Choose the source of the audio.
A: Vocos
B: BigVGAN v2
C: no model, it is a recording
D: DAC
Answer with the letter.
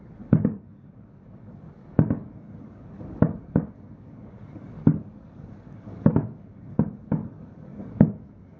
D